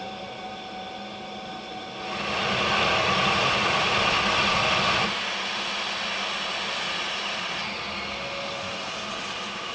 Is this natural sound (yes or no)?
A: yes